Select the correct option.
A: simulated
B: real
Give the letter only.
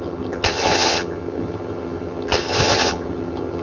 A